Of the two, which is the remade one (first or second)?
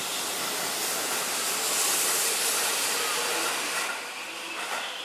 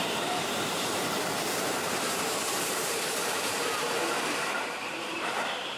second